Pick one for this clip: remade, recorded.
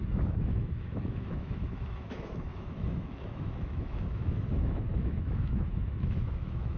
remade